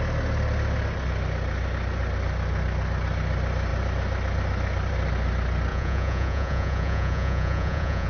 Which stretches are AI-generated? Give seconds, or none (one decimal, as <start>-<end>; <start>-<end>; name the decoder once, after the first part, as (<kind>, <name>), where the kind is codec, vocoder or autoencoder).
5.7-8.1 (vocoder, Vocos)